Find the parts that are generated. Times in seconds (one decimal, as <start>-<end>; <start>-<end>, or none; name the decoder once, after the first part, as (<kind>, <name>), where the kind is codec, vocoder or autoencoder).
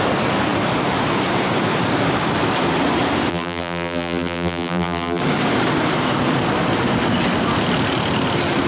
3.3-5.2 (vocoder, BigVGAN v2)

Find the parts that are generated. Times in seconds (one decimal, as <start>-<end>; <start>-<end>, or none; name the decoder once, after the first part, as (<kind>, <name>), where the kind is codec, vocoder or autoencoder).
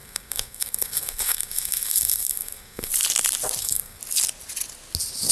0.0-2.9 (codec, SNAC); 3.6-4.0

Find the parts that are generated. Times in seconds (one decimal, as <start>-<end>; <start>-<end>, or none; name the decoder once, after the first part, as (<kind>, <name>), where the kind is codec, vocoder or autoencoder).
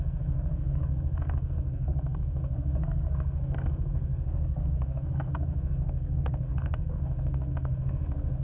0.0-8.4 (codec, SNAC)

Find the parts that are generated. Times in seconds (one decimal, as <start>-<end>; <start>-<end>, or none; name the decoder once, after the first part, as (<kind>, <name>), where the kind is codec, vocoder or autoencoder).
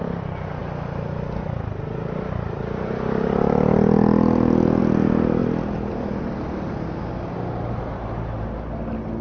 none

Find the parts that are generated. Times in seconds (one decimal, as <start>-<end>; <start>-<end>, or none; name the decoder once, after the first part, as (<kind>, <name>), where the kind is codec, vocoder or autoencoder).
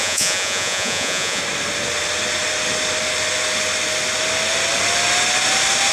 0.0-1.4 (vocoder, Vocos)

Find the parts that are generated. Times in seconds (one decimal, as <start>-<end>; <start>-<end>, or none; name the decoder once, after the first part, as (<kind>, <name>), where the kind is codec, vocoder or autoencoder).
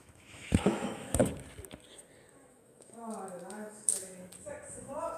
0.0-1.2 (autoencoder, DAC-VAE); 2.5-4.0; 4.7-5.2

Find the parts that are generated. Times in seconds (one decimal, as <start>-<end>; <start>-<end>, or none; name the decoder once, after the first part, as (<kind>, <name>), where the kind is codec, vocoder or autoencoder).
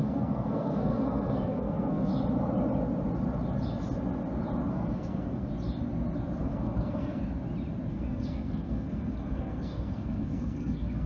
0.0-2.1 (codec, SNAC); 4.7-5.5; 6.4-7.2; 7.9-11.1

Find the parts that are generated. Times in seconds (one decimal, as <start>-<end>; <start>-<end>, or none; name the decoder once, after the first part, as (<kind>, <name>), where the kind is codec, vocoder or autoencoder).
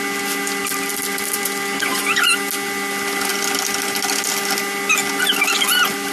0.6-2.0 (vocoder, BigVGAN v2)